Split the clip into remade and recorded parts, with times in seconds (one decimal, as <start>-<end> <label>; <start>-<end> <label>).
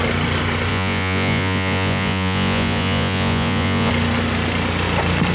0.0-0.7 recorded; 0.7-3.9 remade; 3.9-5.3 recorded